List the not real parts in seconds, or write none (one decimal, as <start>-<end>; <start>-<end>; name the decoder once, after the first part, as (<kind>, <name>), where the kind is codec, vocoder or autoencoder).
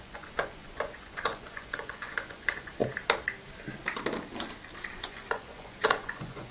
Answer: 0.0-2.8 (vocoder, Vocos); 4.9-6.5